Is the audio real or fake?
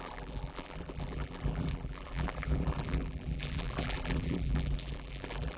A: fake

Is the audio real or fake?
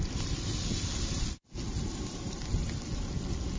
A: real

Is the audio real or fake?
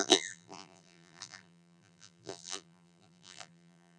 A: fake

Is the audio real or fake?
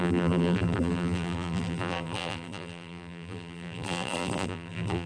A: fake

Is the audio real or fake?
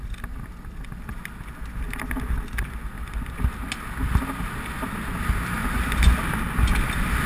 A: real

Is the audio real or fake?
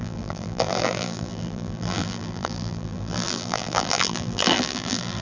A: fake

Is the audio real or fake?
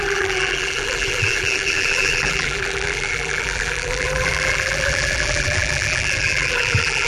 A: fake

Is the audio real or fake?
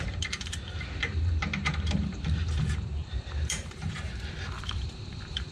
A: fake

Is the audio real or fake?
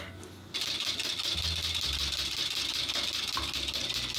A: real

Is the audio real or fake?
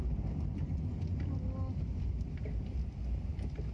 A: real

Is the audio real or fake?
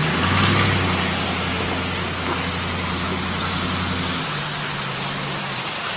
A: real